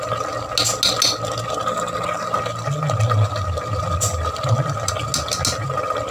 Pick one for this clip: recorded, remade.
recorded